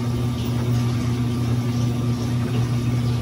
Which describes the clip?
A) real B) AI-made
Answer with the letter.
A